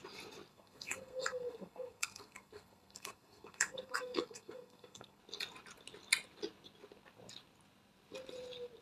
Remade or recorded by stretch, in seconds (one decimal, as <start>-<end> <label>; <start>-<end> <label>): 0.0-0.5 recorded; 0.5-5.2 remade; 5.2-8.8 recorded